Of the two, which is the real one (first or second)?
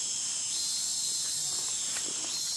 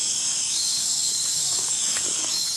first